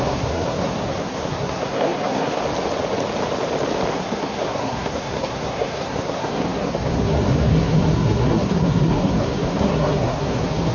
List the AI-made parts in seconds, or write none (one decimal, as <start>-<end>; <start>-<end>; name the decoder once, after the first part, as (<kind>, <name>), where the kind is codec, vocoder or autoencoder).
0.0-2.4 (codec, SNAC); 3.9-10.7